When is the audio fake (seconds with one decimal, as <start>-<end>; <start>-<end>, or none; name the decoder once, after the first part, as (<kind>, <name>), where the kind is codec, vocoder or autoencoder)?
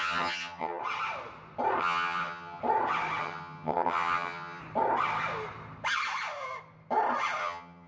0.0-0.8 (vocoder, HiFi-GAN); 1.8-2.6; 3.2-4.6; 7.4-7.9